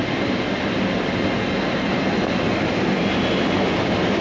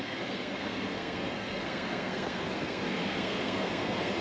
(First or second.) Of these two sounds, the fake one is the second